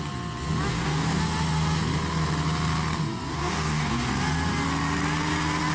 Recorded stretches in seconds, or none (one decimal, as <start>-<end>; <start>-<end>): 0.0-0.7; 1.2-3.3; 4.1-5.7